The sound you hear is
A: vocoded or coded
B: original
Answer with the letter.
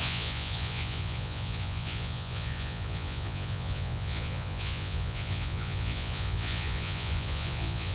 A